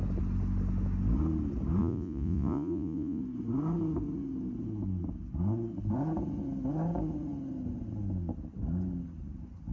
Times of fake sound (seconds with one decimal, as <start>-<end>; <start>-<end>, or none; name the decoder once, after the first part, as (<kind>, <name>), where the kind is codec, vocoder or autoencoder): 1.8-3.2 (vocoder, Vocos)